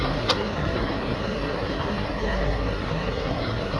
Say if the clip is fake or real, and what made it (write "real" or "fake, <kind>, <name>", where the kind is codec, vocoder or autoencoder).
fake, codec, SNAC